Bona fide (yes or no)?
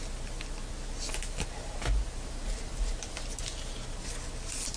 yes